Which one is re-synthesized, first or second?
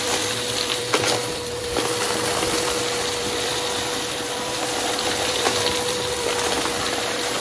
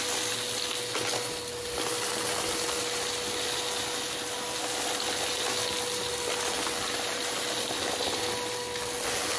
first